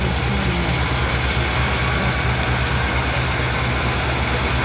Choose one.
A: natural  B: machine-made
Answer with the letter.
A